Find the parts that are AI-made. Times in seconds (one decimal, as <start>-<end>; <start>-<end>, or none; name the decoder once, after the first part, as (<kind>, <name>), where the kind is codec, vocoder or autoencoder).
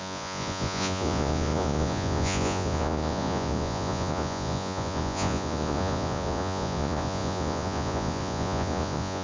0.0-9.2 (vocoder, Vocos)